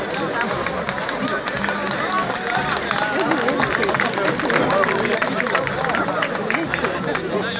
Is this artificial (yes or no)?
no